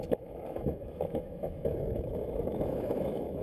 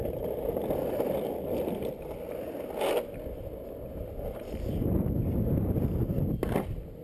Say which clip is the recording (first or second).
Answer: second